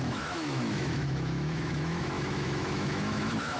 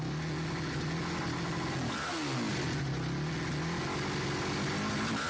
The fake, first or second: first